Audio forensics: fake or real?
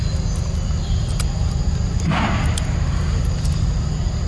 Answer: real